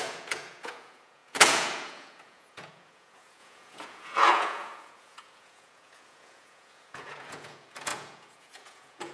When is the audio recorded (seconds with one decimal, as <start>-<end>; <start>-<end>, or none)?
none